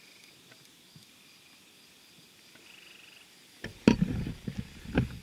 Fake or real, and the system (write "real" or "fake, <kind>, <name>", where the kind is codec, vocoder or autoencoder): real